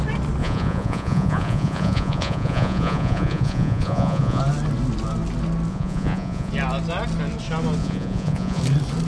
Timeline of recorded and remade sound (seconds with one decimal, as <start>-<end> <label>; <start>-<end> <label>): 0.0-0.4 recorded; 0.4-4.4 remade; 4.4-5.7 recorded; 5.7-6.5 remade; 6.5-7.8 recorded; 7.8-8.6 remade; 8.6-9.1 recorded